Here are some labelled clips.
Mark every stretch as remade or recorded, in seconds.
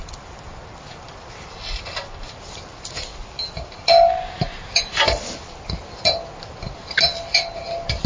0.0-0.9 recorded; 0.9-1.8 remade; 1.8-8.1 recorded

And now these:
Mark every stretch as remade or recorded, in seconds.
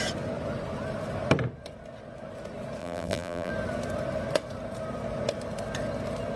0.0-2.8 recorded; 2.8-3.5 remade; 3.5-6.4 recorded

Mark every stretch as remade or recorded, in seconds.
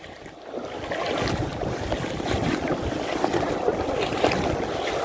0.0-1.5 recorded; 1.5-4.5 remade; 4.5-5.0 recorded